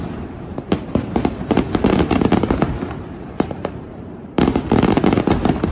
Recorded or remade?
remade